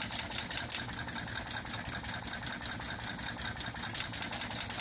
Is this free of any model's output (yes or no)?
yes